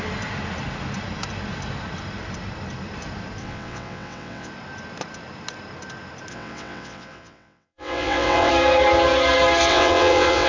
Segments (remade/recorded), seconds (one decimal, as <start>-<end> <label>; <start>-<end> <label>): 0.0-3.4 recorded; 3.4-4.5 remade; 4.5-6.3 recorded; 6.3-8.5 remade; 8.5-9.7 recorded; 9.7-10.5 remade